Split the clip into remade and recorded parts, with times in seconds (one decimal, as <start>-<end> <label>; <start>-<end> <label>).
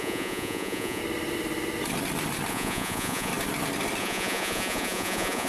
0.0-1.0 remade; 1.0-2.5 recorded; 2.5-3.3 remade; 3.3-4.0 recorded; 4.0-5.5 remade